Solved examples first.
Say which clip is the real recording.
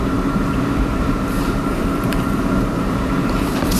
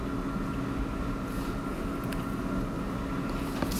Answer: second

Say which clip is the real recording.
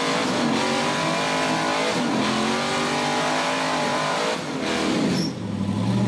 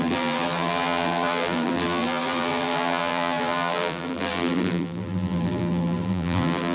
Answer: first